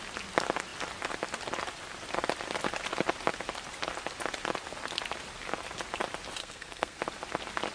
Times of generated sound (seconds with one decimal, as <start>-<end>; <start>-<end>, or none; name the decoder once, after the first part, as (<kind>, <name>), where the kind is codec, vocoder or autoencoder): 6.4-7.0 (codec, SNAC)